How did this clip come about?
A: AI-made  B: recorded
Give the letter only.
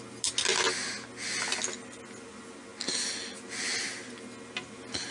B